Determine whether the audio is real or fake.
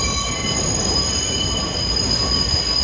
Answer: real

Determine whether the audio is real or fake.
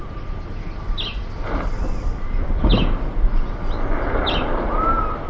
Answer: real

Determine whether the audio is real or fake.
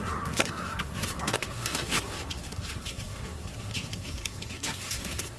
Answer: fake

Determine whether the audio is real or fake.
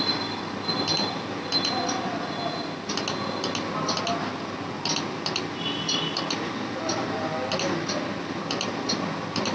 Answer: real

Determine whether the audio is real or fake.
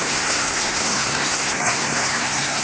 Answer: fake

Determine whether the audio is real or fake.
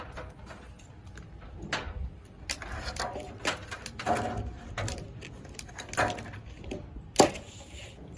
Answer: real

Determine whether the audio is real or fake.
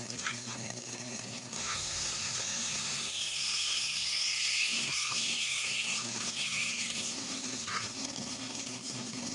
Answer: fake